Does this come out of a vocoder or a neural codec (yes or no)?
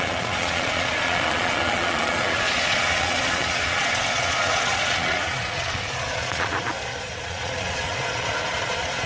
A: yes